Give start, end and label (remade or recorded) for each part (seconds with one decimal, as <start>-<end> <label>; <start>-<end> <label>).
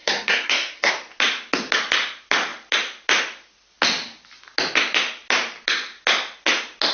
0.0-0.9 remade; 0.9-6.9 recorded